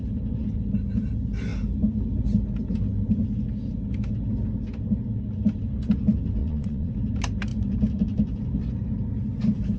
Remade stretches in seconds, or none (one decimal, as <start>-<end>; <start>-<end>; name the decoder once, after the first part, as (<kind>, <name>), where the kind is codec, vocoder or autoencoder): 6.4-6.9 (vocoder, Vocos)